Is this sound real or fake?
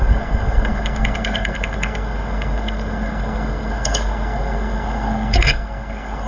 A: fake